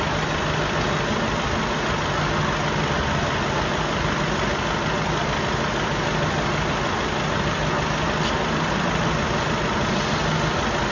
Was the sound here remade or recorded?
recorded